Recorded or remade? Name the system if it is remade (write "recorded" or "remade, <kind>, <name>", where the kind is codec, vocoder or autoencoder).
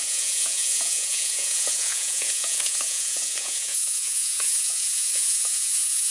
remade, vocoder, Vocos